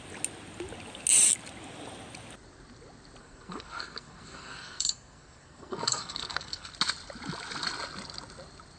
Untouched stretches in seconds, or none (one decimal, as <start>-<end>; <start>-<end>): 0.0-3.2; 6.7-8.8